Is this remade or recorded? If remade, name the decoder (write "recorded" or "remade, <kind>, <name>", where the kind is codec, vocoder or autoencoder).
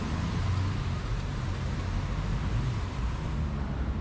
recorded